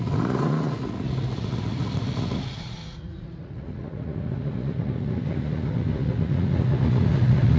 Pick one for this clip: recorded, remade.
remade